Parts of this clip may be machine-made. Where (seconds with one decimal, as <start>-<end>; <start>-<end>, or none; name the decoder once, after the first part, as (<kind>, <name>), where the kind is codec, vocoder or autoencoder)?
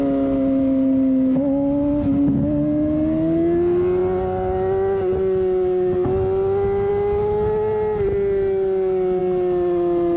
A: none